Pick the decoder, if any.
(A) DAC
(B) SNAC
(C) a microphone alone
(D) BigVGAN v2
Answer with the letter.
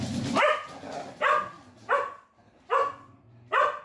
C